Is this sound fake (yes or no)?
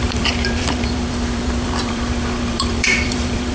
yes